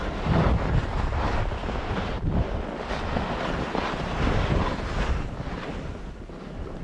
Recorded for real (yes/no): yes